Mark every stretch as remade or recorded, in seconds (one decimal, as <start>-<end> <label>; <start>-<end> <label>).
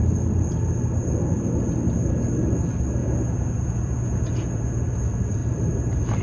0.0-3.0 recorded; 3.0-4.8 remade; 4.8-6.2 recorded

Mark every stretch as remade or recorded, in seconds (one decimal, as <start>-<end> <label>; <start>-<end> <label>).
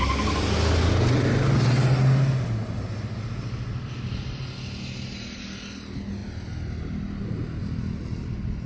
0.0-8.7 recorded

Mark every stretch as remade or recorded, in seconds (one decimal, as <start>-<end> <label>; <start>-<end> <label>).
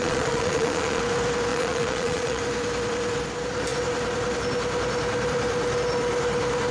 0.0-1.0 remade; 1.0-1.5 recorded; 1.5-2.4 remade; 2.4-6.7 recorded